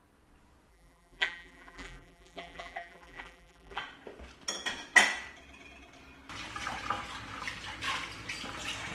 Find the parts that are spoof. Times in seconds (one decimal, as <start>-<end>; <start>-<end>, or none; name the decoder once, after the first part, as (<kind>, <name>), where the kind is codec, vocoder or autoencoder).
0.7-3.8 (vocoder, BigVGAN v2)